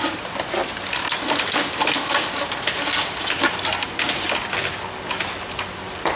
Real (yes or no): yes